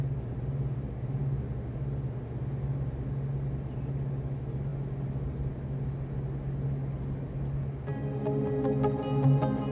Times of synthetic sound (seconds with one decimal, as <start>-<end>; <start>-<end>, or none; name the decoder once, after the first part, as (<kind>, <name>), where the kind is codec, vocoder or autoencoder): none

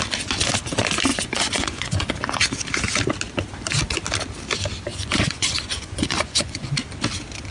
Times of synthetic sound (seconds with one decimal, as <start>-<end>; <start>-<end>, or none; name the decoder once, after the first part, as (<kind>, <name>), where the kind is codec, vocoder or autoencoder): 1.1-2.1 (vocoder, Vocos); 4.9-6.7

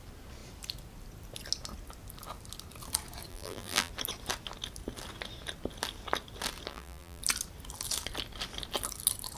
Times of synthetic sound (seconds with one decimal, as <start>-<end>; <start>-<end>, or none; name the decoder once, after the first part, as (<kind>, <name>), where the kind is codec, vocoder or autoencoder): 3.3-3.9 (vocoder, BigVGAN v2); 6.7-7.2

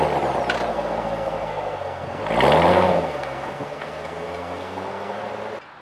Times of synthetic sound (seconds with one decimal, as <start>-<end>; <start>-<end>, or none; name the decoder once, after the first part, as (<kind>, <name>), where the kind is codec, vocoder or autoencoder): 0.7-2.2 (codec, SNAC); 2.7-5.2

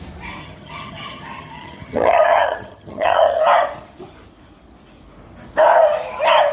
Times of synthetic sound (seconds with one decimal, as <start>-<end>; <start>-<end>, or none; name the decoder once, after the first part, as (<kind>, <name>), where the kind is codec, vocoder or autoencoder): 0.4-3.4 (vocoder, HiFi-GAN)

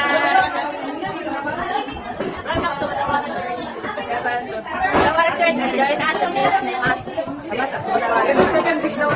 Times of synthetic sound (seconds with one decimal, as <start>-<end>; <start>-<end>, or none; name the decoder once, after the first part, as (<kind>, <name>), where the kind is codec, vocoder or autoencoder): none